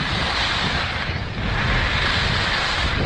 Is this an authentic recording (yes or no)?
yes